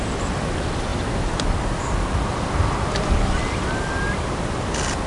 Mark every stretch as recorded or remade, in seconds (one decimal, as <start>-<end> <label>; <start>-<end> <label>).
0.0-5.1 recorded